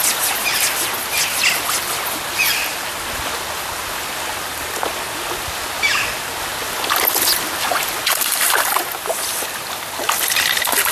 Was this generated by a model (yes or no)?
no